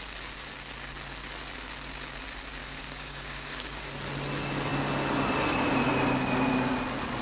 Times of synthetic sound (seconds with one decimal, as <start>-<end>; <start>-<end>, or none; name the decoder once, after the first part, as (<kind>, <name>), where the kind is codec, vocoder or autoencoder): 2.6-3.8 (codec, DAC)